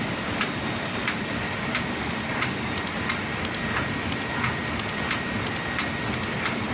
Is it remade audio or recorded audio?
recorded